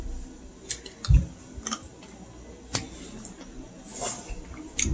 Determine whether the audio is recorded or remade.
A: recorded